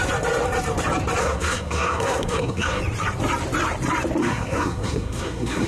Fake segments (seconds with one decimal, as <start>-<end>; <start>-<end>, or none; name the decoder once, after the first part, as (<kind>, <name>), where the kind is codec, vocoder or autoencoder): 1.2-2.8 (codec, SNAC); 4.2-5.7